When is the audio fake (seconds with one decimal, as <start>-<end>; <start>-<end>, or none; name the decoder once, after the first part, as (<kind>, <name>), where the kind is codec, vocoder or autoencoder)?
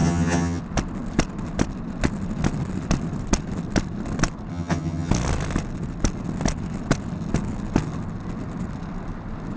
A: 0.0-0.6 (vocoder, HiFi-GAN); 4.5-5.1